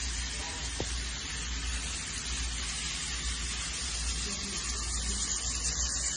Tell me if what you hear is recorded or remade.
recorded